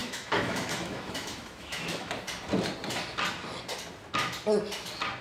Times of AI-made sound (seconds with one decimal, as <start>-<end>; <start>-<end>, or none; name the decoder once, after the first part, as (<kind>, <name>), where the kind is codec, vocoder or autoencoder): 0.0-2.1 (autoencoder, DAC-VAE)